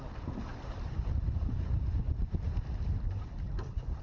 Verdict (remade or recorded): recorded